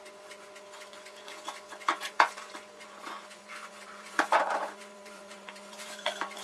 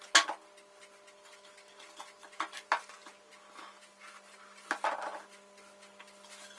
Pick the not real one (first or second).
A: first